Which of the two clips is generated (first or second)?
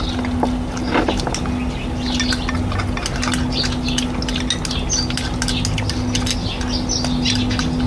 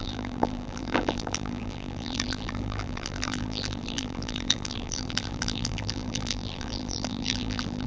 second